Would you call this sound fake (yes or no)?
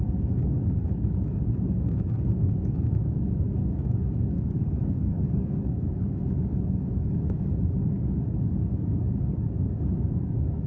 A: yes